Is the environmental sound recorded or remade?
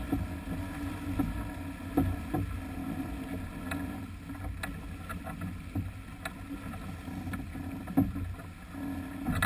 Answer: recorded